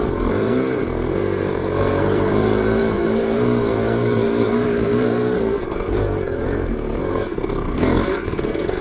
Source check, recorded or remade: remade